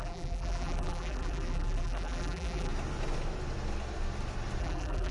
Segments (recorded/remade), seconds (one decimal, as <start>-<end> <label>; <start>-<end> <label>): 0.0-2.7 remade; 2.7-4.6 recorded; 4.6-5.1 remade